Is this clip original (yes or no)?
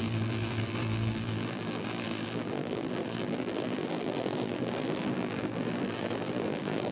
no